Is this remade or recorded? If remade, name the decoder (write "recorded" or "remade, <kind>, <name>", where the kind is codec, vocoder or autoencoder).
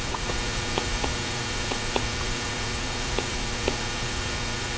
remade, vocoder, Vocos